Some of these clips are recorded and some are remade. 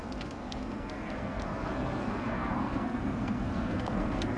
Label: remade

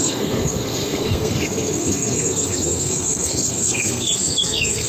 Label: remade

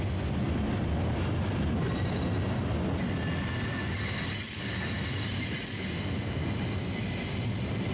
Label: recorded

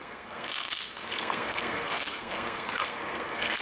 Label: remade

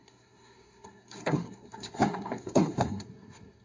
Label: remade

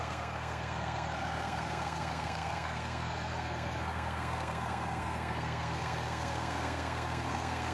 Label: remade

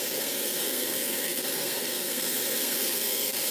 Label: remade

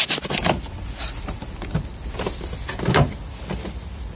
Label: recorded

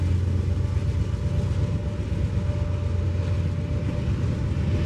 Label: recorded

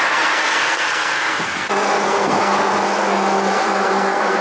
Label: remade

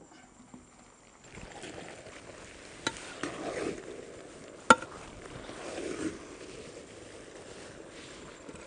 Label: recorded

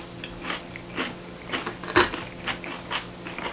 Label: recorded